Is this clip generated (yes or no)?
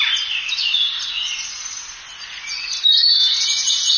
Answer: no